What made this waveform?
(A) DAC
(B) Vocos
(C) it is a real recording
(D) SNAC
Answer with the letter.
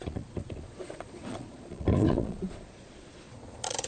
B